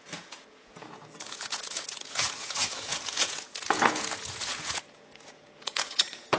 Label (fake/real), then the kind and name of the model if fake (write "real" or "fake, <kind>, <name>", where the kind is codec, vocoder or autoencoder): fake, vocoder, Vocos